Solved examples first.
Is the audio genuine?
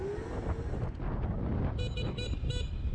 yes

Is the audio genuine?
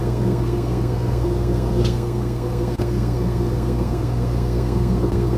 no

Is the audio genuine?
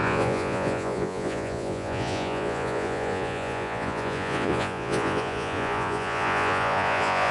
no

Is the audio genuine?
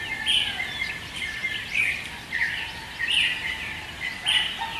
yes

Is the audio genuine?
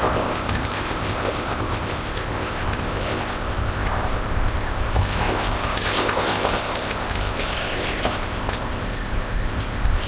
no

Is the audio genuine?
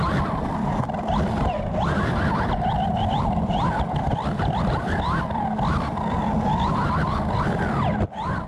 no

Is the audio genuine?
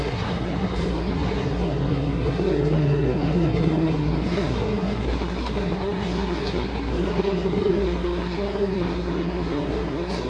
no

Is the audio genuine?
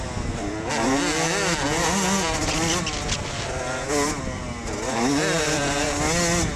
yes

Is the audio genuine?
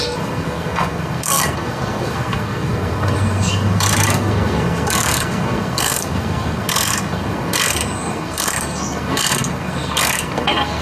no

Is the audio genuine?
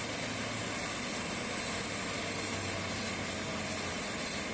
yes